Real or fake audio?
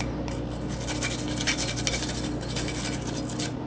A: real